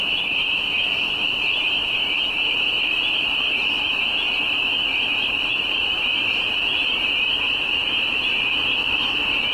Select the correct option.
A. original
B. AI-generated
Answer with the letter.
B